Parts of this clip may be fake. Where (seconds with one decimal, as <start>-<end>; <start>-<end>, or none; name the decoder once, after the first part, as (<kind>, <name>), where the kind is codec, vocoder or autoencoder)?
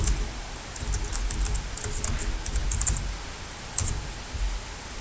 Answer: none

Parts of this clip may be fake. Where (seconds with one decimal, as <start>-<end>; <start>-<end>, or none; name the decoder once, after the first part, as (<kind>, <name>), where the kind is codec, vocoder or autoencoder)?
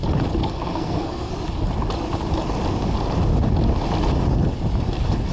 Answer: 0.4-1.3 (codec, SNAC)